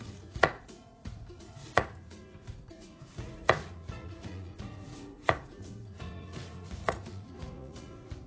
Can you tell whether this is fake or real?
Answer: fake